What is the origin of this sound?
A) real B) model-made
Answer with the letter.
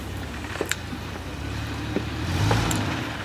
B